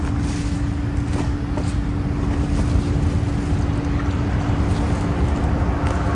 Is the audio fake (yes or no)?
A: no